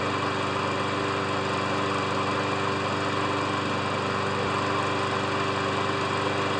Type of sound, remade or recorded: recorded